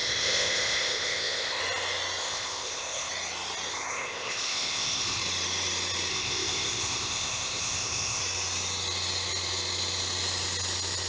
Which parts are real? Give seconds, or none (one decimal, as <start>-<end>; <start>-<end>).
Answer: 1.6-2.2; 3.1-3.7; 5.2-6.1; 8.2-11.1